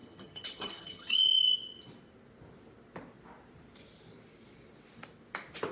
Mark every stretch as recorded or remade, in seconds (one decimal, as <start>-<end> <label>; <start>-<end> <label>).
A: 0.0-1.5 remade; 1.5-5.7 recorded